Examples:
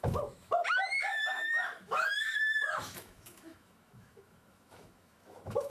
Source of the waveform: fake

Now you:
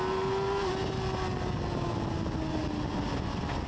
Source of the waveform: real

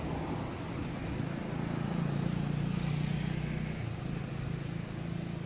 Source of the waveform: real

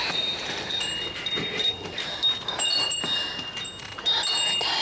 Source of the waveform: real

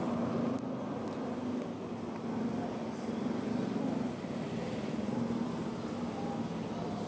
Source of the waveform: real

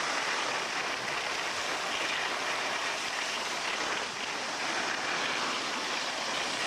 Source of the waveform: real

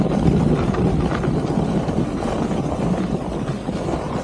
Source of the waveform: real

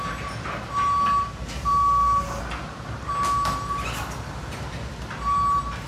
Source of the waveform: real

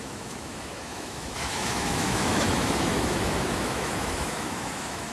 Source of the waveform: fake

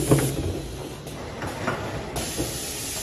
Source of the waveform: real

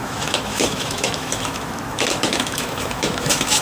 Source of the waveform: fake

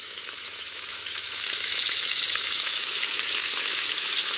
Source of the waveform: fake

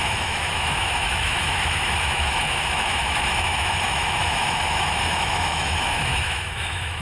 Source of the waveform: fake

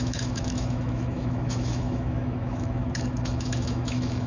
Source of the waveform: fake